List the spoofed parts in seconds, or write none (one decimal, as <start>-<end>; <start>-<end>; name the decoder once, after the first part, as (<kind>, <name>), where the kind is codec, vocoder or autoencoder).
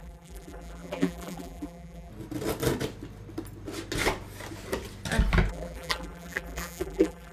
0.0-2.1 (vocoder, BigVGAN v2); 5.5-7.3